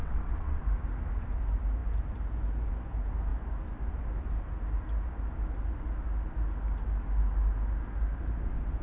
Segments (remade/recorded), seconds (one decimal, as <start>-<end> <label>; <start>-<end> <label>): 0.0-0.6 remade; 0.6-8.8 recorded